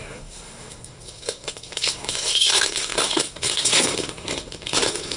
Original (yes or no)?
no